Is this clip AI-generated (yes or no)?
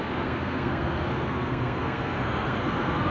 yes